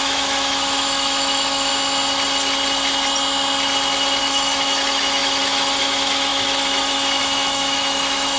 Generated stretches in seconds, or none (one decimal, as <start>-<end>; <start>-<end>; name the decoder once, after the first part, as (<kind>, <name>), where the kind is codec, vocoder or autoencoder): 0.0-1.7 (autoencoder, DAC-VAE); 4.2-8.4